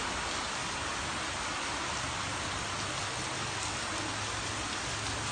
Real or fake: real